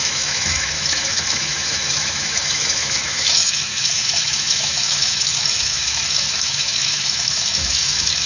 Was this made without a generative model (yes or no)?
no